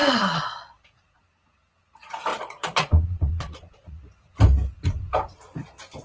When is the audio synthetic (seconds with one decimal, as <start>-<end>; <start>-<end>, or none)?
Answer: 0.0-1.2; 2.3-4.0